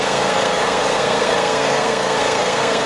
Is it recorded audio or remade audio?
remade